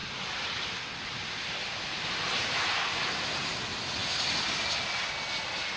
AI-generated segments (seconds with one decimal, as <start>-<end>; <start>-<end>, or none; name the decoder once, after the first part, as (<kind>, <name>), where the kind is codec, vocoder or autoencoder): none